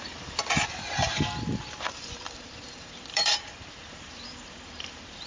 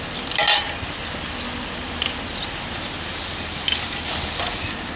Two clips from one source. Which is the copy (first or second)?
first